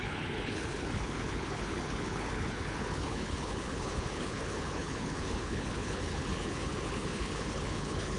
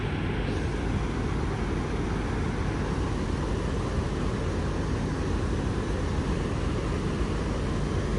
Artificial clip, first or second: first